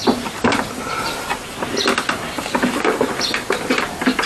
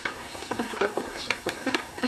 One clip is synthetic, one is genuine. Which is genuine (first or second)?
first